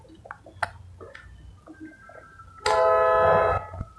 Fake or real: real